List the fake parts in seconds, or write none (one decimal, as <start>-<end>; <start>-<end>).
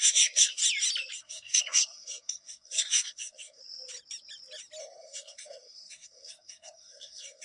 0.0-0.6; 1.2-3.6; 4.8-7.4